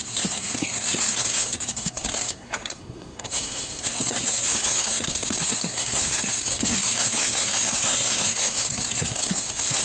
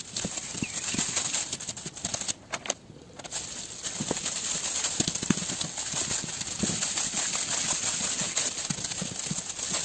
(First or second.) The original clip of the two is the second